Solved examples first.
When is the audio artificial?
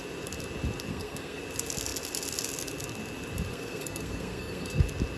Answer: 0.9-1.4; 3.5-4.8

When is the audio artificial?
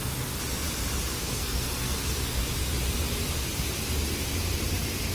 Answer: 1.2-2.4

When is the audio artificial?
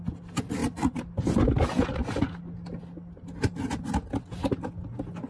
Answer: none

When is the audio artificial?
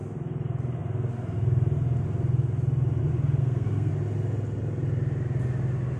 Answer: 3.4-3.9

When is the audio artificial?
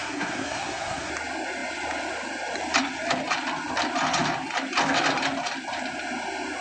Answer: 0.0-1.1